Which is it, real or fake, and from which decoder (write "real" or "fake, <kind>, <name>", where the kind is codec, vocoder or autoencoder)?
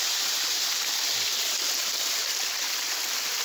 real